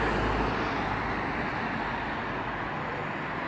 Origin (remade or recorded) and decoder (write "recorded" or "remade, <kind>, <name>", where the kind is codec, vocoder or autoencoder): recorded